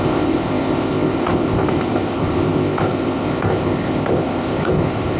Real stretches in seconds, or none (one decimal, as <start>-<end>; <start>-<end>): none